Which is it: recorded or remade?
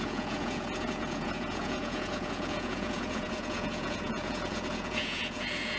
remade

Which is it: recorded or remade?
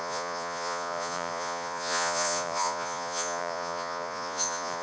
remade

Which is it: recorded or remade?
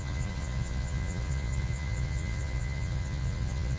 remade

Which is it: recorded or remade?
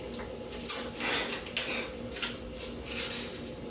recorded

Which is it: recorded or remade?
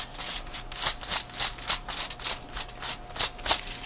recorded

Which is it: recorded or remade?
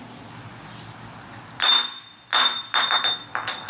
recorded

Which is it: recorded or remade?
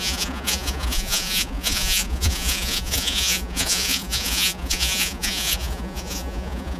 remade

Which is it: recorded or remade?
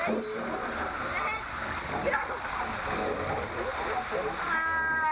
recorded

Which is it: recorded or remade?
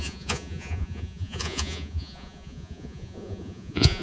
remade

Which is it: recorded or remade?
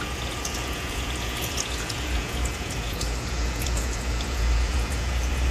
remade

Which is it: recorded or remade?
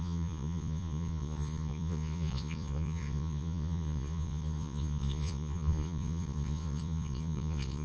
remade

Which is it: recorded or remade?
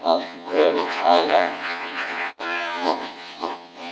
remade